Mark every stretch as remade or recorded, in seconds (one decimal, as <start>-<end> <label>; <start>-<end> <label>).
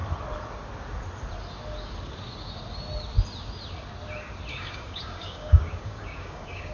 0.0-4.5 recorded; 4.5-6.7 remade